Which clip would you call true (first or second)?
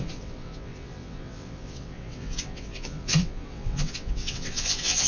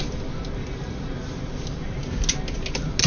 second